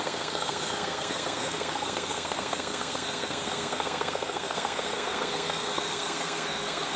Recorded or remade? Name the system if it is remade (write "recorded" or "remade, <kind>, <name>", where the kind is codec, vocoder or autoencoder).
remade, codec, SNAC